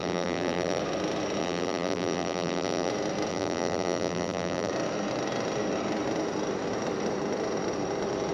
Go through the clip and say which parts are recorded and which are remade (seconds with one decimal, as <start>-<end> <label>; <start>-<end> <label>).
0.0-0.8 remade; 0.8-1.4 recorded; 1.4-2.9 remade; 2.9-3.3 recorded; 3.3-4.7 remade; 4.7-8.3 recorded